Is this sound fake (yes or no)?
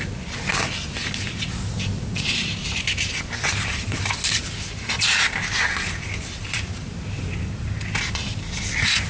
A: no